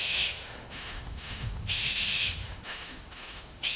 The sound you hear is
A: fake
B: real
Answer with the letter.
A